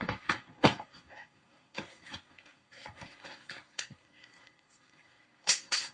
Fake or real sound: fake